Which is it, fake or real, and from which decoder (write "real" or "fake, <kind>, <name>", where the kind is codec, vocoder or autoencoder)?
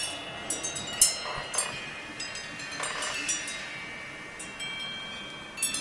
real